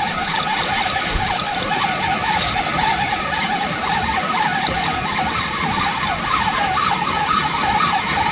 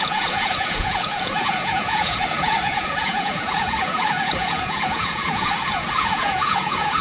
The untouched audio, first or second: first